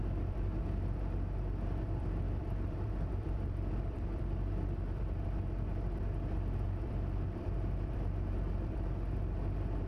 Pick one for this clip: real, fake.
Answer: fake